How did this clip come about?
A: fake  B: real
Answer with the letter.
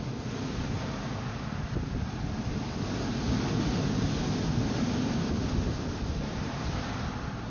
B